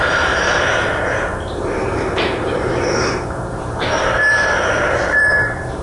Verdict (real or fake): fake